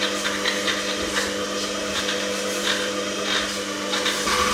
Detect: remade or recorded recorded